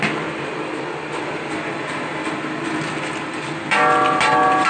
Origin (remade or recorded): recorded